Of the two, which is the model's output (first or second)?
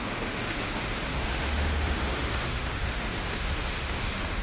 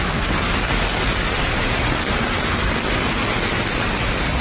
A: first